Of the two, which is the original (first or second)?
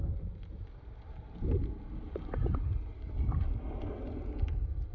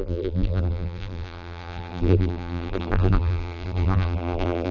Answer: first